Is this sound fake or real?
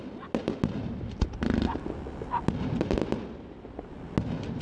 real